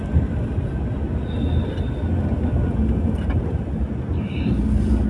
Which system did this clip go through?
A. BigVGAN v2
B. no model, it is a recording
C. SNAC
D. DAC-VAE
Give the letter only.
B